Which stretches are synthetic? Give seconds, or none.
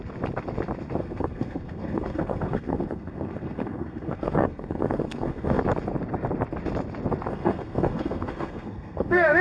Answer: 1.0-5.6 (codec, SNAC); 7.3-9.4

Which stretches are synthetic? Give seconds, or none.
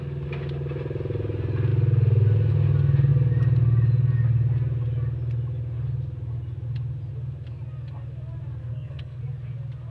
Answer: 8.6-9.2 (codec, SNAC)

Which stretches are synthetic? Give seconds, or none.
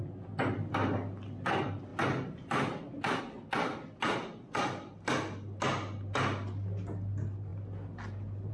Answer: none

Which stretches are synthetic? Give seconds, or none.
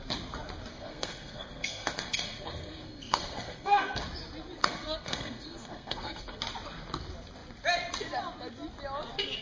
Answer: 0.7-4.0 (codec, SNAC); 4.6-6.4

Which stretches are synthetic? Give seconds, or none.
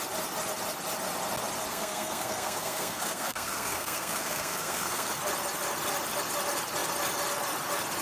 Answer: 1.7-5.1 (codec, SNAC)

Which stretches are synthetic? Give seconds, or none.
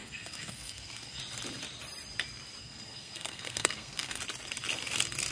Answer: 0.0-1.2 (codec, SNAC); 2.6-4.2